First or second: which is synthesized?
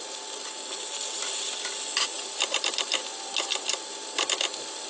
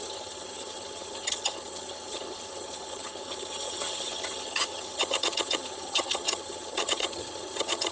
second